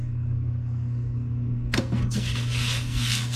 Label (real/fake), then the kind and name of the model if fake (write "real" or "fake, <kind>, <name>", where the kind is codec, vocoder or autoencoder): fake, codec, SNAC